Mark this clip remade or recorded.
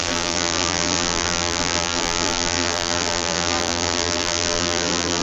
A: remade